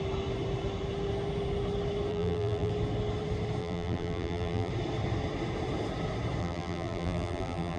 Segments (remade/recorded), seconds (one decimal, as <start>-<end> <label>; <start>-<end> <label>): 0.0-2.1 recorded; 2.1-2.7 remade; 2.7-3.6 recorded; 3.6-4.7 remade; 4.7-6.4 recorded; 6.4-7.8 remade